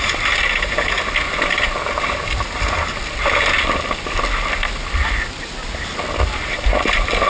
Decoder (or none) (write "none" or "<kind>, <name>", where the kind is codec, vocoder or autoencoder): none